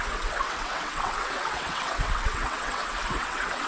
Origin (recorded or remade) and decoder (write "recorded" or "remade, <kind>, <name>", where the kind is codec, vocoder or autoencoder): remade, vocoder, WaveNeXt